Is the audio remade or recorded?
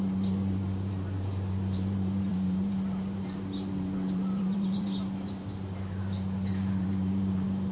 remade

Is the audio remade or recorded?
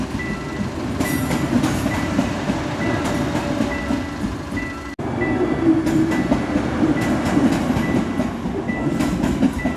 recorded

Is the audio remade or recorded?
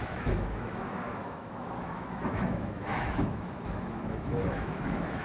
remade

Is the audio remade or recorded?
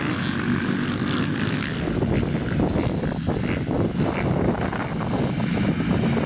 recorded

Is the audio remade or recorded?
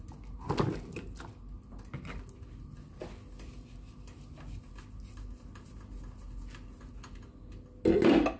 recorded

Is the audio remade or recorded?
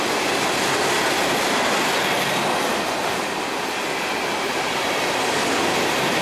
recorded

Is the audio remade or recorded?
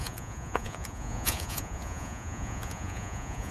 remade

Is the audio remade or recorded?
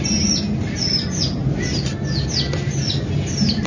recorded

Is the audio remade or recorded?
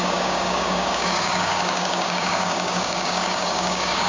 remade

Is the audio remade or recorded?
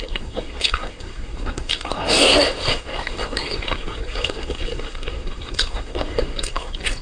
remade